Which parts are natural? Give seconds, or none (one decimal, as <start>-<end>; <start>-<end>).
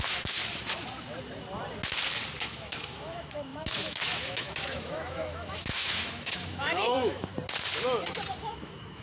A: 0.4-2.4; 7.3-8.4